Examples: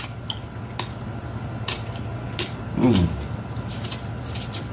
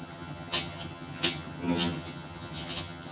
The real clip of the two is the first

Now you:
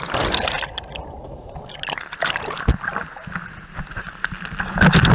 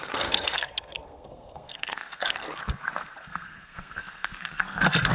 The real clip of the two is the first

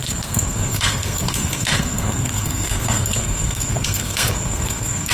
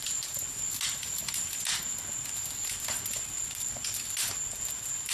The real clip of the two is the second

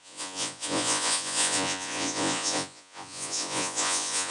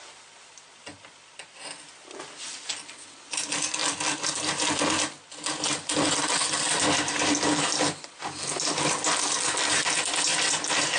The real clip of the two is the second